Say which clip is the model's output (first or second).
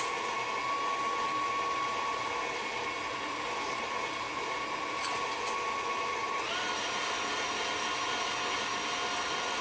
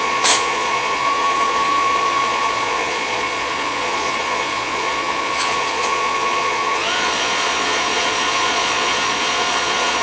second